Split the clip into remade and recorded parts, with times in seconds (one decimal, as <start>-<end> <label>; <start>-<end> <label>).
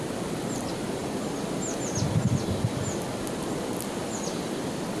0.0-5.0 recorded